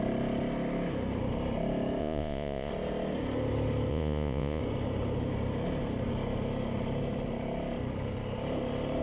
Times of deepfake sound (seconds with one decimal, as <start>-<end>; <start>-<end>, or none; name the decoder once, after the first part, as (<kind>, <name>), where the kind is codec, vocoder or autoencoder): 2.0-2.7 (vocoder, Vocos); 3.9-4.6